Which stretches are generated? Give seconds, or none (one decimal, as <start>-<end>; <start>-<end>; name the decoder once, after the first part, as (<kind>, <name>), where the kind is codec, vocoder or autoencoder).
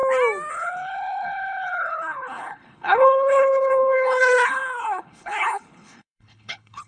0.5-6.9 (codec, HILCodec)